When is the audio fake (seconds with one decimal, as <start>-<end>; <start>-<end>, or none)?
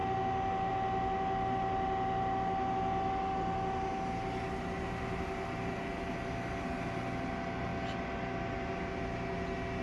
none